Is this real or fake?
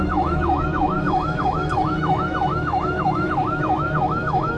fake